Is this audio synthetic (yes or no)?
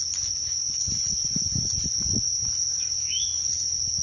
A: no